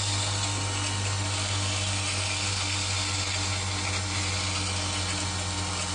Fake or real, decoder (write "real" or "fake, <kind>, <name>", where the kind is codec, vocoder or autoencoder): real